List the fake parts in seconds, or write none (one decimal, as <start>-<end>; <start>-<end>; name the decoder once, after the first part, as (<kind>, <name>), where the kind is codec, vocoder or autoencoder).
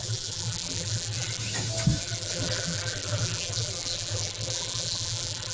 0.0-1.4 (vocoder, BigVGAN v2); 2.0-5.5